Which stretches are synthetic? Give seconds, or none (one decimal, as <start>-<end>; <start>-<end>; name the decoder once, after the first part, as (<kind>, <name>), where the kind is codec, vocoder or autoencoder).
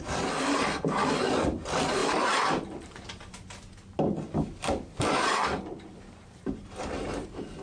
5.9-7.1 (vocoder, BigVGAN v2)